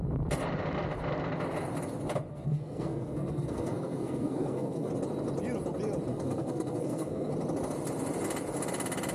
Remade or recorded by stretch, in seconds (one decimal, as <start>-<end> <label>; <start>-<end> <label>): 0.0-2.3 recorded; 2.3-4.9 remade; 4.9-6.1 recorded; 6.1-7.3 remade; 7.3-9.1 recorded